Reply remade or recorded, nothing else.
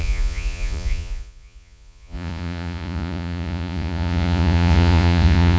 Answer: remade